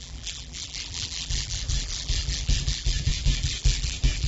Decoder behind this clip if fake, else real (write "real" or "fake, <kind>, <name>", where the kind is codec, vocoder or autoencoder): fake, vocoder, BigVGAN v2